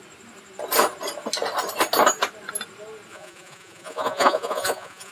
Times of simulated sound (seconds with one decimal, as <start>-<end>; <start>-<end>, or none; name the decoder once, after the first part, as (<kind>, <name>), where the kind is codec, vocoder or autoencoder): 3.1-5.1 (vocoder, Vocos)